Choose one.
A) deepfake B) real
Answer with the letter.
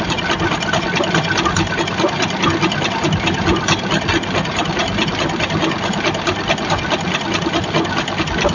B